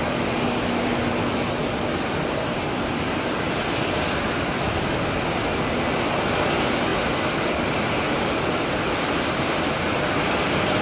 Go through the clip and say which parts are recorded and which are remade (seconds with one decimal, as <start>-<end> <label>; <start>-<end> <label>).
0.0-10.8 recorded